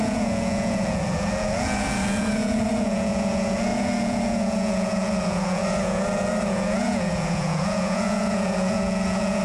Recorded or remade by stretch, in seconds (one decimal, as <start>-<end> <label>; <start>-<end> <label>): 0.0-9.4 remade